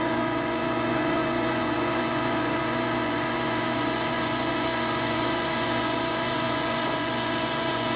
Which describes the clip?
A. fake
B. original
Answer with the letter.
A